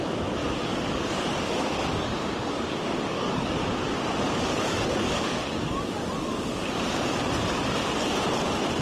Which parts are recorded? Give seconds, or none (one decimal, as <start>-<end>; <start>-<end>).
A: 0.0-0.4; 3.6-4.5; 6.7-8.8